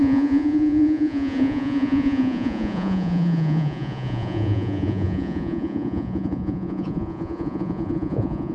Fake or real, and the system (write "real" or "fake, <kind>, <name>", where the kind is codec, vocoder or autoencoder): fake, vocoder, Vocos